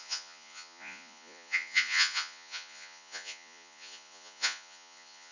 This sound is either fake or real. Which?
fake